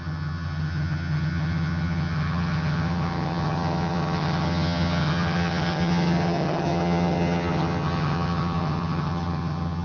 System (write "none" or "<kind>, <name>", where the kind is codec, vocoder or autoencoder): vocoder, HiFi-GAN